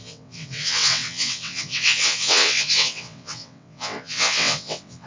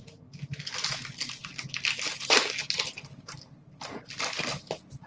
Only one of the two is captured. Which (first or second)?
second